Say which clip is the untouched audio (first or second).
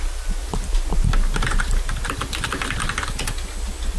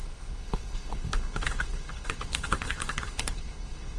first